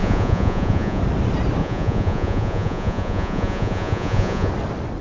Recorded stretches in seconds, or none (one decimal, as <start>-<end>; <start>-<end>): 1.0-1.6; 4.5-5.0